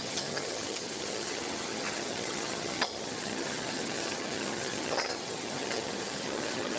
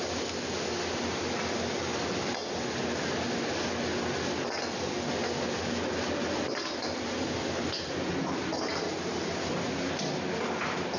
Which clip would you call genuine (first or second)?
second